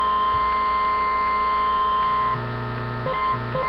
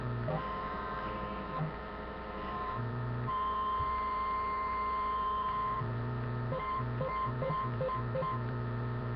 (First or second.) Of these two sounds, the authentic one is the first